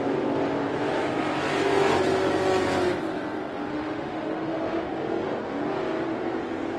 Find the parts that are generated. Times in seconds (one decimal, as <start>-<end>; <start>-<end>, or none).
3.7-4.9